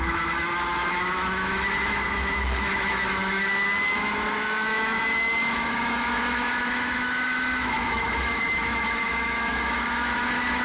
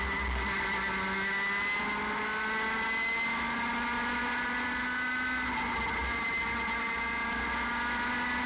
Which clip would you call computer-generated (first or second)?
first